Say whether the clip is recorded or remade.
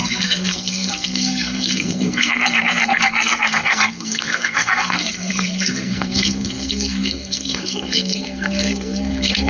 remade